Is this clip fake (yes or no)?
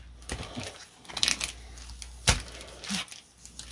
no